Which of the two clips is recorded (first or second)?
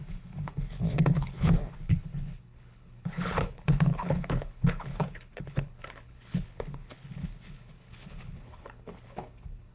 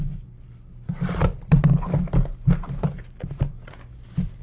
second